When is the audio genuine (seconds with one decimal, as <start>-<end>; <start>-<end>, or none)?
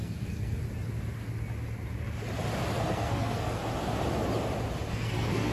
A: 0.6-2.7; 3.6-4.9